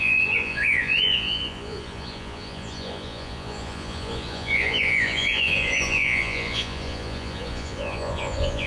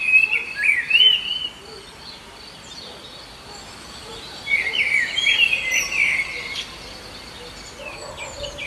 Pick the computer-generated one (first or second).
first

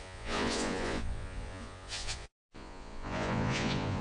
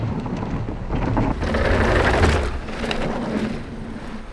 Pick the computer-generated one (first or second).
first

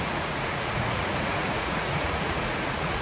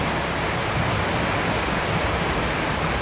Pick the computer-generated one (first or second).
first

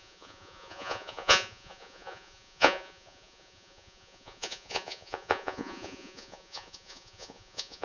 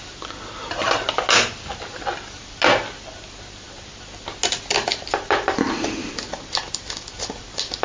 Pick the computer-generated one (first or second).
first